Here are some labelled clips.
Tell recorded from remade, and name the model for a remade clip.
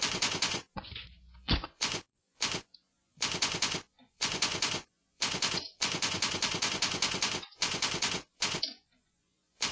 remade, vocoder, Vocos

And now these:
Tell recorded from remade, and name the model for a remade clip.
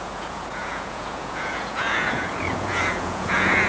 remade, vocoder, Vocos